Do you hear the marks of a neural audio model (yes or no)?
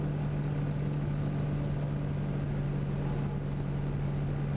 no